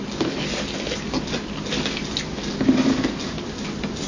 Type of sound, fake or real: real